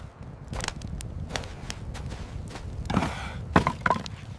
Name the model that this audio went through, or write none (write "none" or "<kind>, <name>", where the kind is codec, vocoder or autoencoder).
none